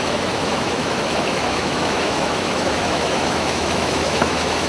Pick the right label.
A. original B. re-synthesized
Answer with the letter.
B